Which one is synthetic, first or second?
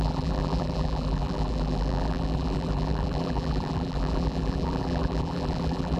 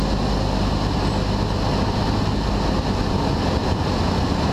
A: first